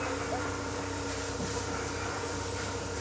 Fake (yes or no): yes